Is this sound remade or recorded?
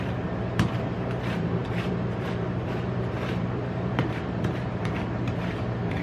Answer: remade